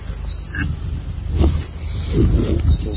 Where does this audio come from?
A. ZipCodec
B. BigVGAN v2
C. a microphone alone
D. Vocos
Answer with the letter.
C